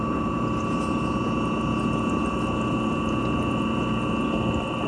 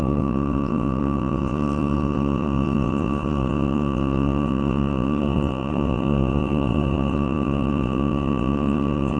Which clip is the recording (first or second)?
first